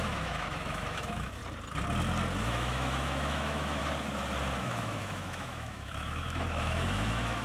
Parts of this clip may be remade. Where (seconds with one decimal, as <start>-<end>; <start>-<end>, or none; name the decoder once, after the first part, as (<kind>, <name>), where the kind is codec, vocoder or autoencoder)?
0.0-1.4 (autoencoder, DAC-VAE); 2.4-3.8; 4.6-7.4